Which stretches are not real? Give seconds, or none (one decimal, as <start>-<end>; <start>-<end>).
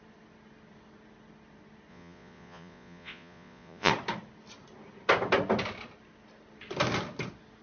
1.9-3.9